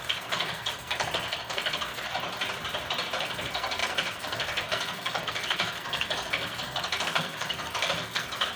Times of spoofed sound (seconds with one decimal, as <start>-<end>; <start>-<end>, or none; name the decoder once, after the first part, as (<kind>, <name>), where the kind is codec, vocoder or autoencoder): 0.0-2.1 (codec, SNAC); 3.2-8.6